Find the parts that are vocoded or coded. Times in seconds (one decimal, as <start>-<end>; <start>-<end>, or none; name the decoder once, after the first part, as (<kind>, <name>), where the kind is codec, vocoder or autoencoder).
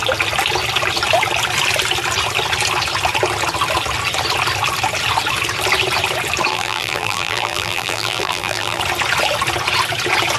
6.5-8.8 (vocoder, BigVGAN v2)